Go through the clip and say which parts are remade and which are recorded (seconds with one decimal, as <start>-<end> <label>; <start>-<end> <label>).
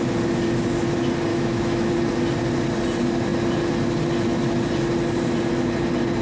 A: 0.0-1.3 recorded; 1.3-1.9 remade; 1.9-6.2 recorded